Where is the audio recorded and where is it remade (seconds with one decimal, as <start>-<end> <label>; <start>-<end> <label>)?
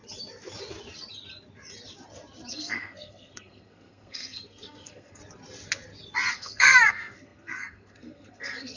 0.0-2.5 recorded; 2.5-5.2 remade; 5.2-6.3 recorded; 6.3-8.8 remade